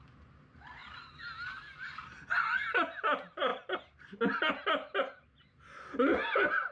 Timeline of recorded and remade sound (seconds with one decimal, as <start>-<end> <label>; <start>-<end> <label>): 0.0-6.7 recorded